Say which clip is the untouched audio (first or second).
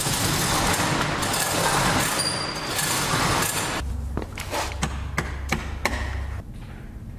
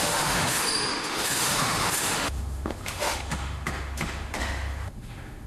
first